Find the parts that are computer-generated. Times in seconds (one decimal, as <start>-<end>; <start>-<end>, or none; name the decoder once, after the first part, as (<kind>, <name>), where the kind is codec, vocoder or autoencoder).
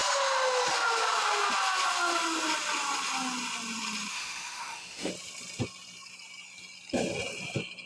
4.1-5.1 (autoencoder, DAC-VAE)